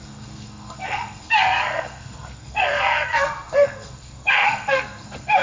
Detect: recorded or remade remade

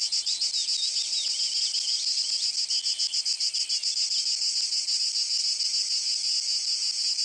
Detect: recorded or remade recorded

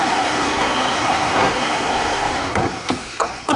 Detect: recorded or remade remade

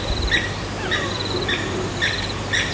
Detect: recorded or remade recorded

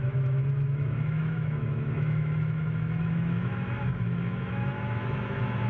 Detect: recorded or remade remade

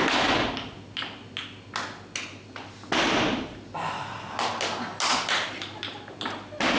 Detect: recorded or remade recorded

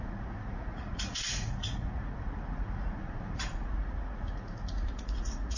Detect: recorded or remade remade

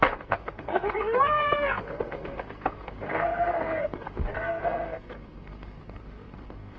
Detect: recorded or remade remade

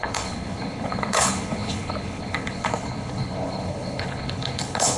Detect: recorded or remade remade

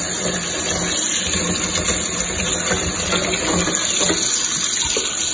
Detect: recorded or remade recorded